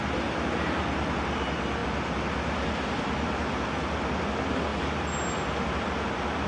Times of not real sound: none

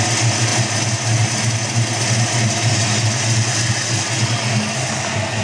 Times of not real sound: none